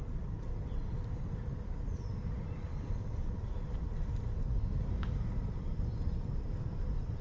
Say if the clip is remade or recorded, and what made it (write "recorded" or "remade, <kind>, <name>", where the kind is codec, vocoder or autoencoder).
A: recorded